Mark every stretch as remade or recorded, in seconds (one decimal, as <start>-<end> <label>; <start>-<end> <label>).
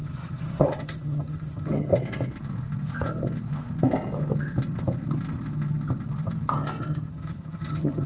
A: 0.0-1.9 remade; 1.9-6.8 recorded; 6.8-8.1 remade